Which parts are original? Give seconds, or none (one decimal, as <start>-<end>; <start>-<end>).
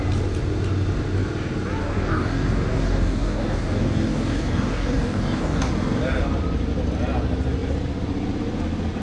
0.0-1.8; 5.7-9.0